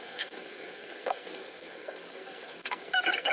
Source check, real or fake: fake